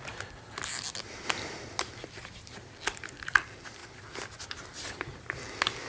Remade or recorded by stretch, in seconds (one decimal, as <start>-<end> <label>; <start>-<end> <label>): 0.0-5.9 recorded